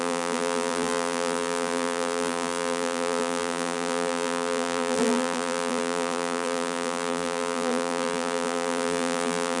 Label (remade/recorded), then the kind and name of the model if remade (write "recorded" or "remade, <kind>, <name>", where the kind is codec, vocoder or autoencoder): remade, vocoder, BigVGAN v2